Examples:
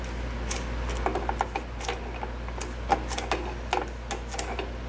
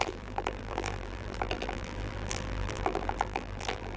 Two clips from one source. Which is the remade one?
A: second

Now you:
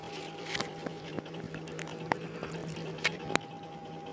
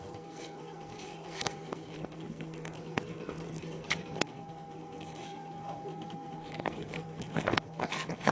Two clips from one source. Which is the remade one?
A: second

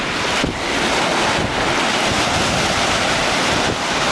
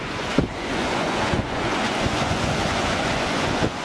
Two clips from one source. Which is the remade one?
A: second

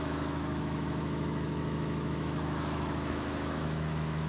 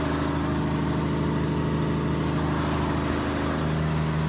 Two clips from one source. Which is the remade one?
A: first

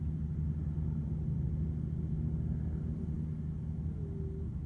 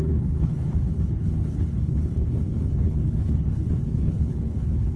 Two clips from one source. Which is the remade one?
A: second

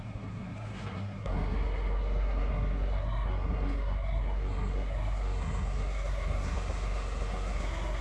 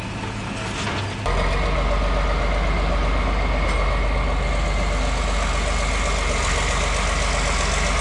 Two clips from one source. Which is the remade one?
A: first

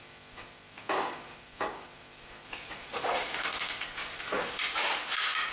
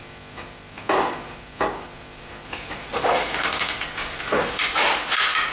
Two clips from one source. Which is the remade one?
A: first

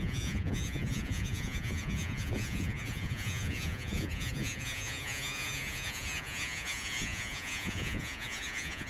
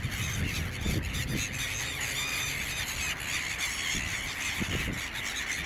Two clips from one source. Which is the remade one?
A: first